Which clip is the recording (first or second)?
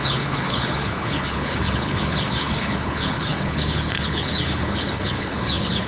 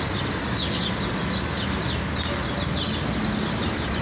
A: second